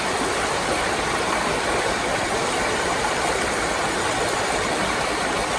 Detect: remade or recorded recorded